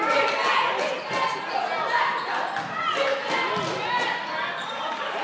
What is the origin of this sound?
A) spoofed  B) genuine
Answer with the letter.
B